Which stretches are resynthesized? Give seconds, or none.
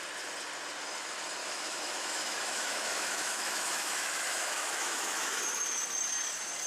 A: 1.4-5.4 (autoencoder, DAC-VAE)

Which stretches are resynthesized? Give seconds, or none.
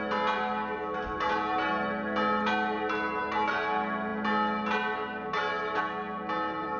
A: none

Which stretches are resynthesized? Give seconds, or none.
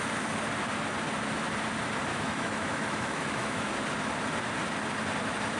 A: 2.1-3.7 (autoencoder, DAC-VAE)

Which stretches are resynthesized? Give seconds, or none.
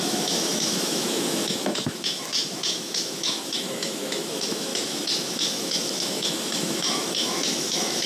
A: 0.0-8.1 (autoencoder, DAC-VAE)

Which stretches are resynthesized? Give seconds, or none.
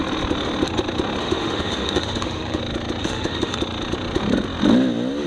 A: 1.2-2.6 (autoencoder, DAC-VAE); 3.0-3.6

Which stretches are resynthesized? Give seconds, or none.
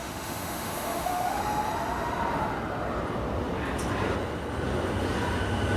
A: 0.0-1.4 (autoencoder, DAC-VAE)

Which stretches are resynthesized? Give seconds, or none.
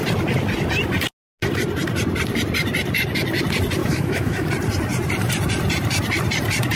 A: 3.8-4.5 (autoencoder, DAC-VAE)